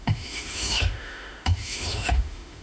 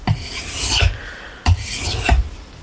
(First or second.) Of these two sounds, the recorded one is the second